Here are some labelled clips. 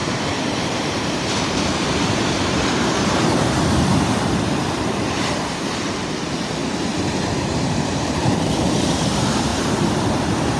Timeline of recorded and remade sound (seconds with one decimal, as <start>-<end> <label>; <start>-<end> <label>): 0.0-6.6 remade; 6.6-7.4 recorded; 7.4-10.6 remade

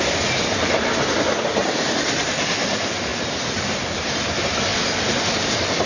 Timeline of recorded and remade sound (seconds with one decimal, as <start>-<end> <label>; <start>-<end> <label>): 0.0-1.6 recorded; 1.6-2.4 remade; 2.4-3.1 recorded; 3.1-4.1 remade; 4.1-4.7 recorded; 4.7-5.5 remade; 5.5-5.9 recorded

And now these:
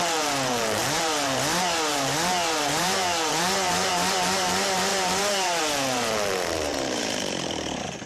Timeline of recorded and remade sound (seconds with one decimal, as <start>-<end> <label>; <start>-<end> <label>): 0.0-8.1 remade

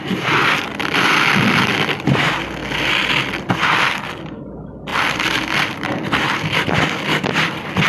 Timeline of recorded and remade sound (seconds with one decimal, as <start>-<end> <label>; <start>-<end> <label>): 0.0-2.6 recorded; 2.6-3.5 remade; 3.5-4.9 recorded; 4.9-7.9 remade

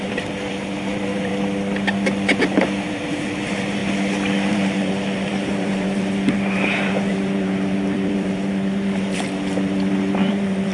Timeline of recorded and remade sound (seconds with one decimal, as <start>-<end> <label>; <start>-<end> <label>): 0.0-1.3 remade; 1.3-2.4 recorded; 2.4-3.8 remade; 3.8-4.5 recorded; 4.5-10.7 remade

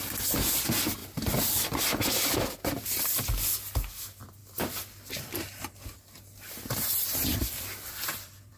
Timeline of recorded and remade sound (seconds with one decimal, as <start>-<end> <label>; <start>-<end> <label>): 0.0-1.0 recorded; 1.0-2.5 remade; 2.5-7.3 recorded; 7.3-8.6 remade

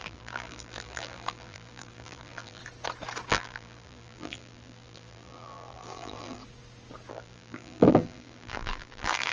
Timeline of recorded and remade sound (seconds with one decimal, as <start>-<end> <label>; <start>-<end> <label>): 0.0-2.6 remade; 2.6-3.3 recorded; 3.3-6.4 remade; 6.4-7.1 recorded; 7.1-9.3 remade